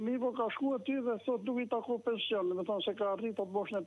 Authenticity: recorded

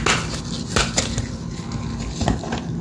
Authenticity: recorded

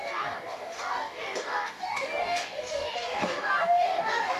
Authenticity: remade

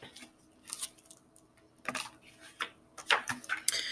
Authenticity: recorded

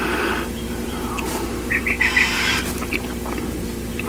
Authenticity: remade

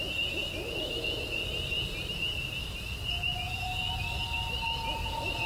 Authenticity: recorded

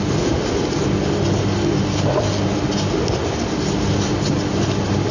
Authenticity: recorded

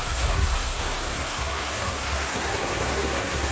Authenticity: remade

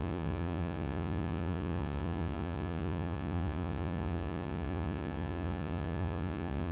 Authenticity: remade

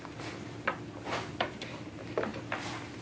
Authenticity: recorded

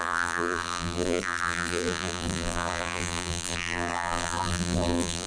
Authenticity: remade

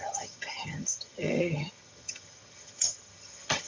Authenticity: remade